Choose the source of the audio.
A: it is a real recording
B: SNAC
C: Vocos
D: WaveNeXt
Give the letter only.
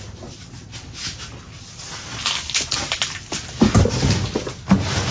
A